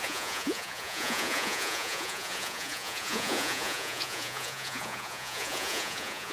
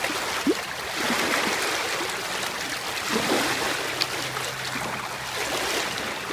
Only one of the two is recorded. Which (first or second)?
second